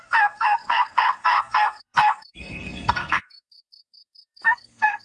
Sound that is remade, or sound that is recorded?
remade